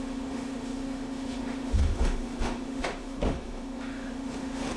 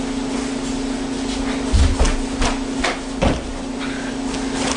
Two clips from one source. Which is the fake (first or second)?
first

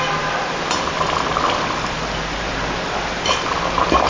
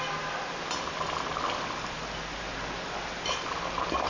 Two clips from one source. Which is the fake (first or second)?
first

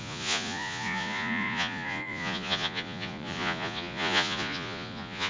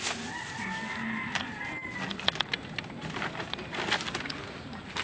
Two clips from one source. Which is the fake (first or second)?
first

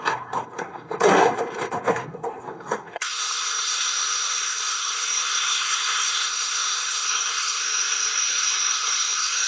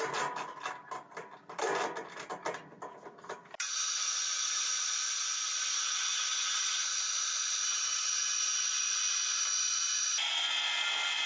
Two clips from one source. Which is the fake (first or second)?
first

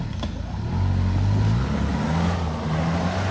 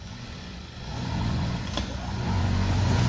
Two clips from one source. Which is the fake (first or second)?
second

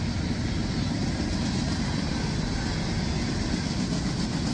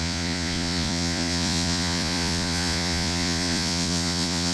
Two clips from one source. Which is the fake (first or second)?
second